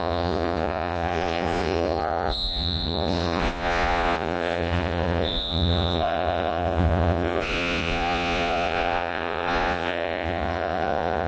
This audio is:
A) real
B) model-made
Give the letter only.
B